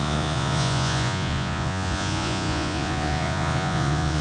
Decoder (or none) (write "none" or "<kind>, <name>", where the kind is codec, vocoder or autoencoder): vocoder, Vocos